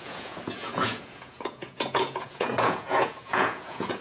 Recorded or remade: remade